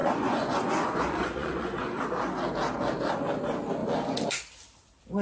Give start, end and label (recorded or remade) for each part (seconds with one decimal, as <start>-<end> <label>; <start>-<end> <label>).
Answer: 0.0-2.0 remade; 2.0-5.2 recorded